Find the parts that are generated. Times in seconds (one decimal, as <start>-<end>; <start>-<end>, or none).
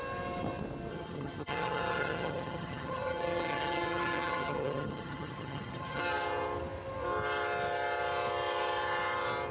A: 0.9-6.0